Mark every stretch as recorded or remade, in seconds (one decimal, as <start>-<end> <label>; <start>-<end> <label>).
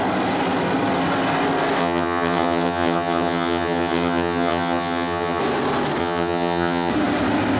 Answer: 0.0-1.8 recorded; 1.8-5.4 remade; 5.4-6.0 recorded; 6.0-6.9 remade; 6.9-7.6 recorded